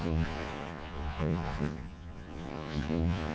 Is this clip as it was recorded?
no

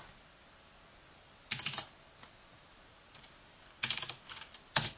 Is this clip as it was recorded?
yes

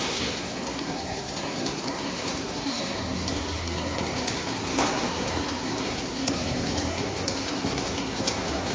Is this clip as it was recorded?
no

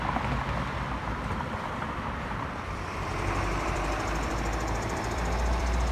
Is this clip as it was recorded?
no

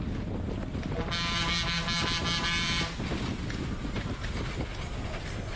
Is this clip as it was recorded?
yes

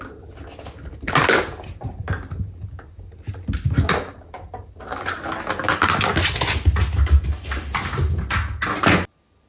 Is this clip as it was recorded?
yes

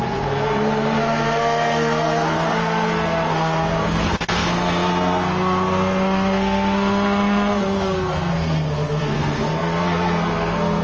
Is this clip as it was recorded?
no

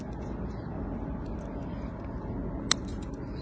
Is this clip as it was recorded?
yes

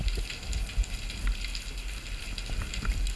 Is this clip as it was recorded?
yes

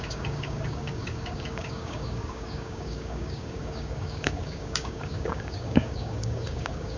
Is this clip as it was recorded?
no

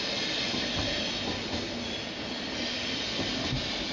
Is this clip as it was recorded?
yes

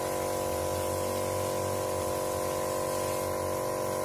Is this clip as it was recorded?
yes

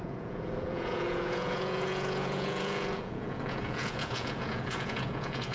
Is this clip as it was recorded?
no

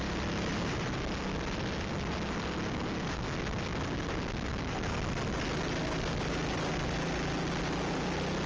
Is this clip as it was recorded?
yes